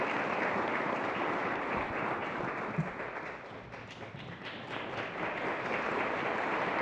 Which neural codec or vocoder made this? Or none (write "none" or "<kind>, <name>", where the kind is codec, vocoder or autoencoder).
none